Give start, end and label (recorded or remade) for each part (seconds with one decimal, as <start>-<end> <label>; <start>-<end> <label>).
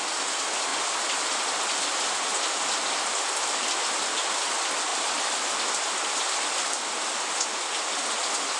0.0-8.6 recorded